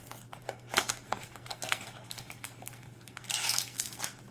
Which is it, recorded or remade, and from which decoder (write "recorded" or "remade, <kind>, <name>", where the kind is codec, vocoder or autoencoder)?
remade, codec, SNAC